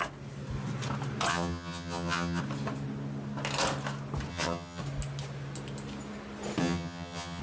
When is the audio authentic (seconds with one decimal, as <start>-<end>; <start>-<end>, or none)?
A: 0.0-1.3; 2.4-4.3; 4.8-6.6